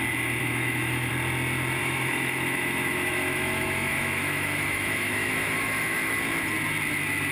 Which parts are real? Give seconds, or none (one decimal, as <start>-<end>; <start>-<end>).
0.0-0.4; 1.1-1.8; 6.2-7.3